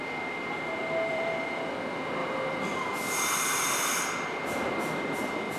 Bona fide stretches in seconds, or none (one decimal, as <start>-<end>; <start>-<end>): 0.0-1.1; 1.7-2.2; 4.7-5.6